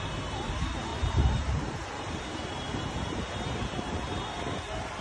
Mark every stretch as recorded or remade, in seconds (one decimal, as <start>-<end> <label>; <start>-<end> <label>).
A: 0.0-0.9 recorded; 0.9-2.2 remade; 2.2-5.0 recorded